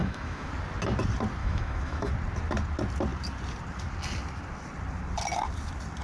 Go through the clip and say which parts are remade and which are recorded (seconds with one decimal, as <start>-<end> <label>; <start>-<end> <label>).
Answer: 0.0-0.5 remade; 0.5-1.4 recorded; 1.4-2.1 remade; 2.1-6.0 recorded